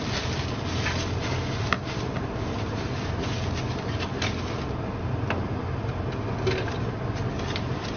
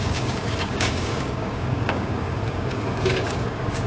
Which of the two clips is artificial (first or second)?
second